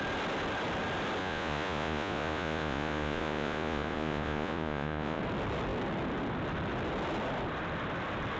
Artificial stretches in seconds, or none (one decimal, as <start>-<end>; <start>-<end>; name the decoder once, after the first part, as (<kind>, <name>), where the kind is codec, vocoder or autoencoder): 1.2-5.2 (vocoder, Vocos)